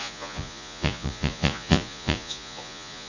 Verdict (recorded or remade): remade